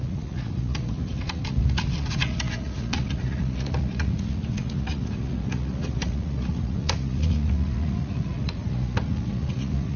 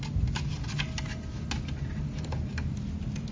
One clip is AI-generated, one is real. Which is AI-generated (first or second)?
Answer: first